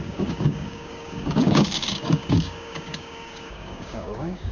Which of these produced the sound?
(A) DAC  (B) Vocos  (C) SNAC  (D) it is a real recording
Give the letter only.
A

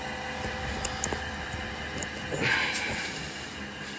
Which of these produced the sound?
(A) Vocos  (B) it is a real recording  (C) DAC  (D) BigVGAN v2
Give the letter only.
B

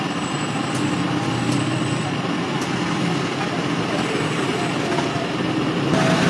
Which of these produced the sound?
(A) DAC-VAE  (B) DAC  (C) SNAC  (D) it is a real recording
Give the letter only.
D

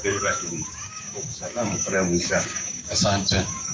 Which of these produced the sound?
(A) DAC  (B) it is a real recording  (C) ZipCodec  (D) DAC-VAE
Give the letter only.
A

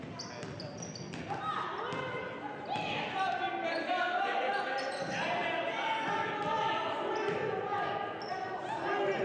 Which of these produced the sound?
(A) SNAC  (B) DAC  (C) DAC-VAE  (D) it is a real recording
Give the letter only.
D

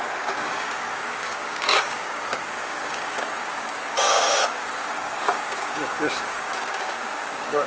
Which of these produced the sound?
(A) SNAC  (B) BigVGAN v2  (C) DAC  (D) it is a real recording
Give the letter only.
C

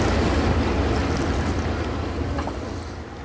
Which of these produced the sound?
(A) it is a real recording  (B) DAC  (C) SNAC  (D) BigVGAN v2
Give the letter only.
A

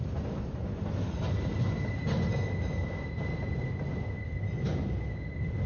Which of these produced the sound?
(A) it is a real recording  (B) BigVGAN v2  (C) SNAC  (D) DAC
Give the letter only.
A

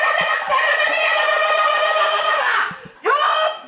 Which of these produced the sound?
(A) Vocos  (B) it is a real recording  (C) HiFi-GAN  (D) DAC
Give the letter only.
B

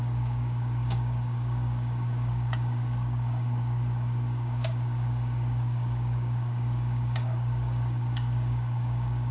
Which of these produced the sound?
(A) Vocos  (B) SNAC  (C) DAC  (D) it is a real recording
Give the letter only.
C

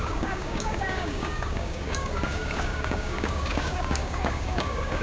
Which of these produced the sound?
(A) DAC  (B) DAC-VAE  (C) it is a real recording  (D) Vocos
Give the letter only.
A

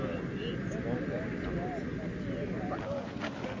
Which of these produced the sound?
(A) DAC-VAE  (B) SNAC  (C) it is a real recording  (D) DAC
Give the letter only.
C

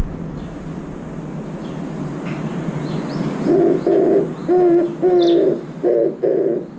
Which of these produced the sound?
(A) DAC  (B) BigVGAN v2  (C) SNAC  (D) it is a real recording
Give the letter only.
D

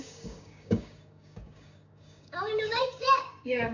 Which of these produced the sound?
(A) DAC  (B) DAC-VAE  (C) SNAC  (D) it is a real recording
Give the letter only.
A